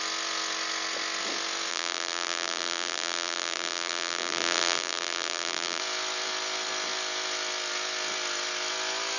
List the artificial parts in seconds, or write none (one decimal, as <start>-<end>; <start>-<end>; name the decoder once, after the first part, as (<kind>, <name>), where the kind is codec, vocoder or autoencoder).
1.7-5.8 (vocoder, BigVGAN v2)